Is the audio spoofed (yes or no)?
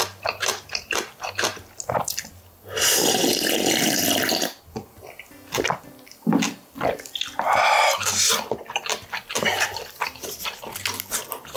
no